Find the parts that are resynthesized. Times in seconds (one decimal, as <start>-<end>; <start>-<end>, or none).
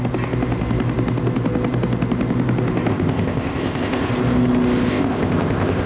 2.9-4.1; 4.9-5.9